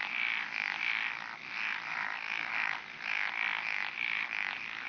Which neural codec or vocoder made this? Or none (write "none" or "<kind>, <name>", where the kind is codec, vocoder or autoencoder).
none